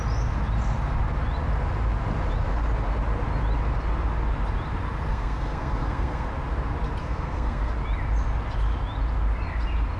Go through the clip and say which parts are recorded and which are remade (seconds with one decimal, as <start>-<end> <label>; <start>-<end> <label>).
0.0-5.1 recorded; 5.1-6.3 remade; 6.3-7.0 recorded; 7.0-7.7 remade; 7.7-10.0 recorded